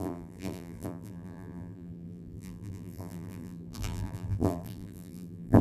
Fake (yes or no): yes